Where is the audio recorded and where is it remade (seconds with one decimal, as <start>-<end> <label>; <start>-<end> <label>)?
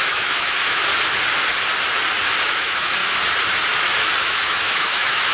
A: 0.0-0.9 remade; 0.9-2.4 recorded; 2.4-3.0 remade; 3.0-4.2 recorded; 4.2-5.3 remade